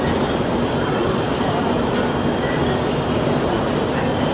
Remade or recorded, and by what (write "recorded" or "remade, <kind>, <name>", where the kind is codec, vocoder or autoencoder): recorded